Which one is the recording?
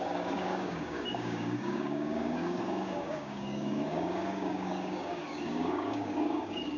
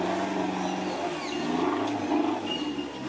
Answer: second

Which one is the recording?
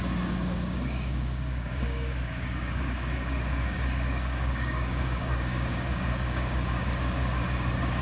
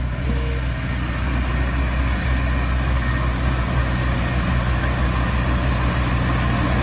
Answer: second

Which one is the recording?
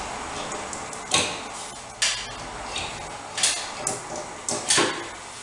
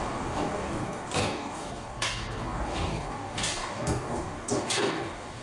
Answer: first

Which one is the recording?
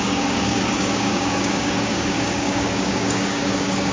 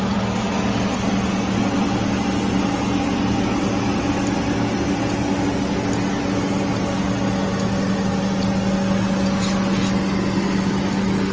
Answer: second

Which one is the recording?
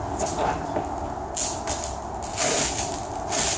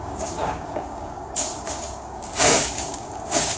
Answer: first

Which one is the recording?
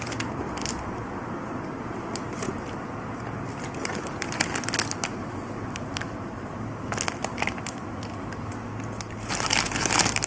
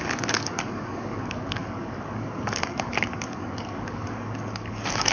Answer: first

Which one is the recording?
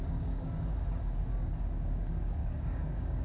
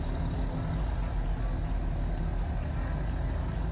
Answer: second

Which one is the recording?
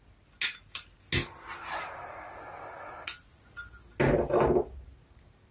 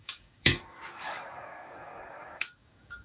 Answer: first